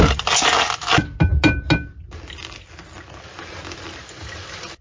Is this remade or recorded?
recorded